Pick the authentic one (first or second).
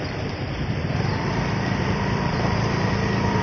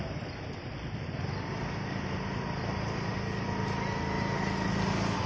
second